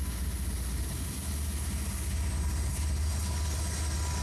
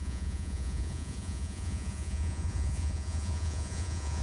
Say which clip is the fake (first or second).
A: second